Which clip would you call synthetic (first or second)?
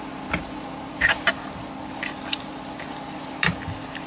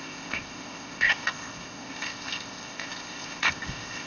second